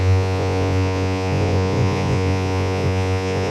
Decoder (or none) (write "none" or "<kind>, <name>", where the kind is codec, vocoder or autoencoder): vocoder, Vocos